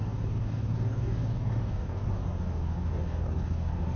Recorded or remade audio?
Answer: remade